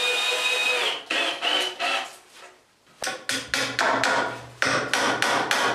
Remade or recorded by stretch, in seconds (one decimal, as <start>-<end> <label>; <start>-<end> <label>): 0.0-5.7 recorded